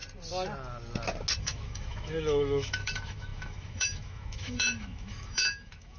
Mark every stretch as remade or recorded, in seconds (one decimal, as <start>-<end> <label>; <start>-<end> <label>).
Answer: 0.0-1.4 recorded; 1.4-6.0 remade